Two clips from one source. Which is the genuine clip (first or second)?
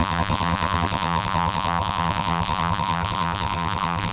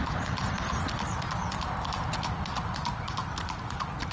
second